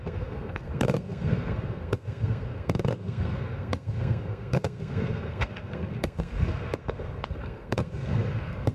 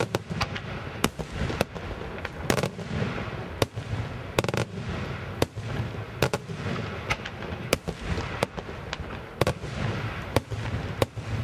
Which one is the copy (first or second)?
first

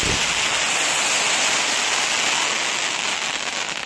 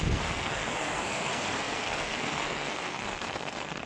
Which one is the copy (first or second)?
second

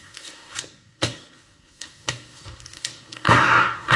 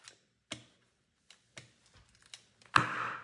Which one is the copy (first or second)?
first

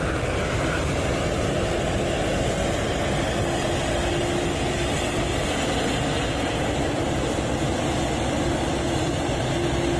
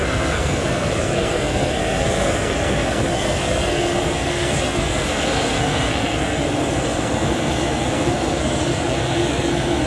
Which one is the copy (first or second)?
second